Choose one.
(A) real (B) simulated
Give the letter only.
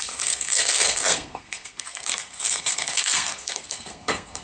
B